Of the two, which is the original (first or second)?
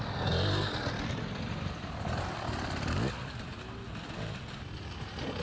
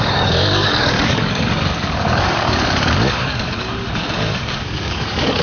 first